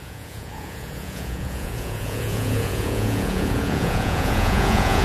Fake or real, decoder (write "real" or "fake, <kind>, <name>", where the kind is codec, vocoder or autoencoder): fake, vocoder, Vocos